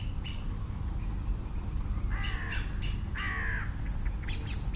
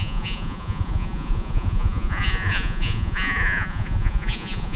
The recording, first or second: first